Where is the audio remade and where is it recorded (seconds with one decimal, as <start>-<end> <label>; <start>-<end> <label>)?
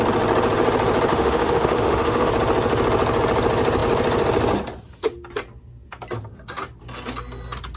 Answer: 0.0-1.1 recorded; 1.1-2.3 remade; 2.3-7.8 recorded